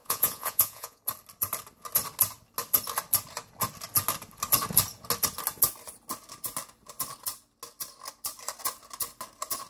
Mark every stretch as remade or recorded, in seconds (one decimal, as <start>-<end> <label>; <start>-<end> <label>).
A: 0.0-1.0 remade; 1.0-9.7 recorded

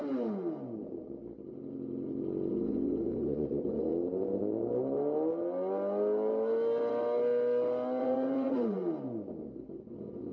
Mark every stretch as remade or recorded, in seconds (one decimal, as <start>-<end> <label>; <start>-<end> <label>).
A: 0.0-2.5 recorded; 2.5-3.9 remade; 3.9-8.0 recorded; 8.0-8.8 remade; 8.8-9.9 recorded; 9.9-10.3 remade

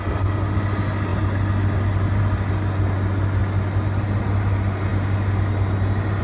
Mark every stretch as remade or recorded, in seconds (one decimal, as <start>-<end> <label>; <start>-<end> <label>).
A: 0.0-6.2 recorded

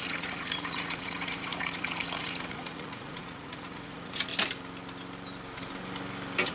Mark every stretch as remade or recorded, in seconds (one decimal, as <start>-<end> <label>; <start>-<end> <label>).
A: 0.0-4.3 remade; 4.3-6.5 recorded

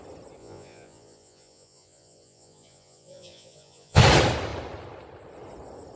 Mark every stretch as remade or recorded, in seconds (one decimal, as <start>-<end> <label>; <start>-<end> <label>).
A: 0.0-0.4 recorded; 0.4-4.0 remade; 4.0-6.0 recorded

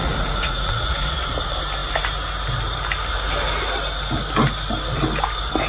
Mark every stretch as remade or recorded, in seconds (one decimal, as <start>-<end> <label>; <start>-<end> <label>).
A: 0.0-1.2 remade; 1.2-5.7 recorded